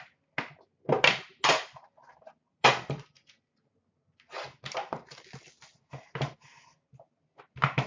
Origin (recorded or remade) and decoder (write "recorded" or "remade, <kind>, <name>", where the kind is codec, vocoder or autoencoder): recorded